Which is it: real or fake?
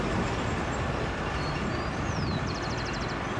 real